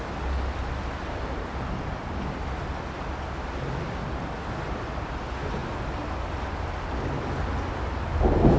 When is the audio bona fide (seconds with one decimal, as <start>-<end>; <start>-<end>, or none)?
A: 0.0-8.6